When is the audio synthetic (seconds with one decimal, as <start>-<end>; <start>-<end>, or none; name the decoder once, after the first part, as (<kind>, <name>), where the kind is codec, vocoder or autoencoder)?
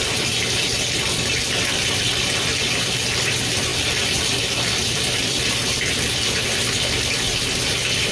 2.0-3.7 (vocoder, BigVGAN v2); 4.7-5.6; 7.5-8.1